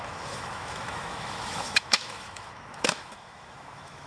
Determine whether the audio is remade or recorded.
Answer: remade